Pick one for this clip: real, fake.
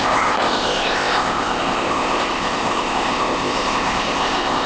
fake